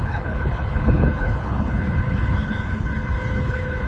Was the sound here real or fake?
fake